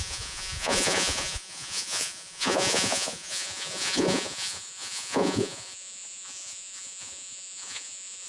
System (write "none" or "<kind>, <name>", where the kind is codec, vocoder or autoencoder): vocoder, Vocos